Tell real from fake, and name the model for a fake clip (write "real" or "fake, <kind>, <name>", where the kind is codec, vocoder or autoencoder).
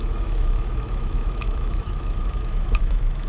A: fake, autoencoder, DAC-VAE